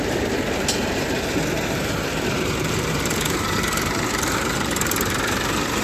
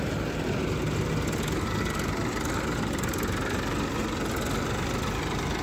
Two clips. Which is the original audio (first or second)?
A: second